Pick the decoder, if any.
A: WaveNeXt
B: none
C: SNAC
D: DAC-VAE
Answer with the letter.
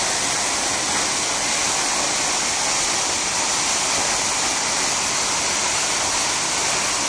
B